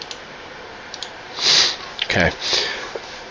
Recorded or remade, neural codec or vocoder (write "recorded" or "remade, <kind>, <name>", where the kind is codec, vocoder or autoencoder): remade, vocoder, BigVGAN v2